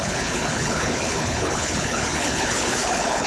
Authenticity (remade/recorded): remade